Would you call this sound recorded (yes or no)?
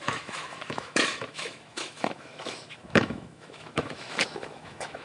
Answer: no